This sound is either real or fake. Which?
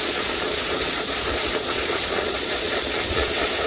fake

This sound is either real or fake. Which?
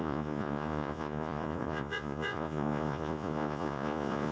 fake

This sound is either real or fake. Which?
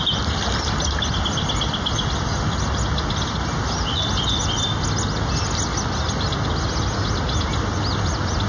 real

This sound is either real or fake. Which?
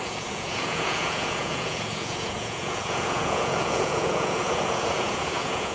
fake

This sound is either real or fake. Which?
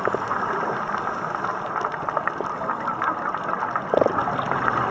real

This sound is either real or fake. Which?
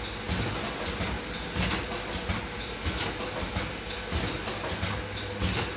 real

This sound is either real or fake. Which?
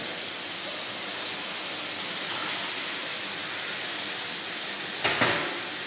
real